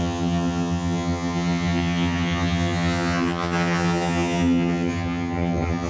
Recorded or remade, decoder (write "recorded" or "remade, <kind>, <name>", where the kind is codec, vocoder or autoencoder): remade, vocoder, HiFi-GAN